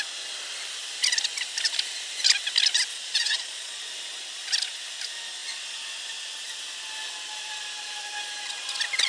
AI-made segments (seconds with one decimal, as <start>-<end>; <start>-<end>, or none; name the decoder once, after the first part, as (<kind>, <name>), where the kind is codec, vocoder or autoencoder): 2.9-3.8 (vocoder, Vocos)